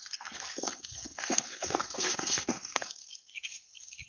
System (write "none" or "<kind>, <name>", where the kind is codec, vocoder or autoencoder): codec, SNAC